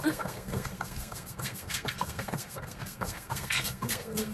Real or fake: fake